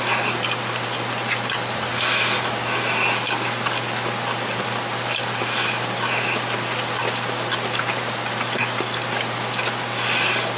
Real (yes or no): yes